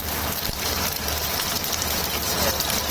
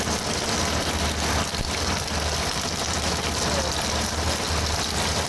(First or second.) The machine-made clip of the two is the first